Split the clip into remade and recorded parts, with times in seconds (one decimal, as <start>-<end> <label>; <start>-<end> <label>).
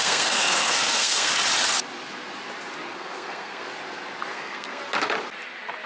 0.0-1.3 remade; 1.3-2.9 recorded; 2.9-3.7 remade; 3.7-4.3 recorded; 4.3-4.8 remade; 4.8-5.9 recorded